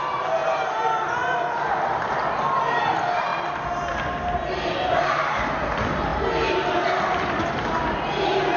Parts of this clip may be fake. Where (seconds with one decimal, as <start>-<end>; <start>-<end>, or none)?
none